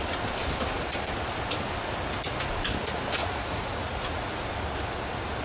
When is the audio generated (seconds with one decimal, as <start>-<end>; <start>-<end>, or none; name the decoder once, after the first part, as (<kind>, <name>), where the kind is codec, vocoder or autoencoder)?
3.2-4.4 (vocoder, Vocos)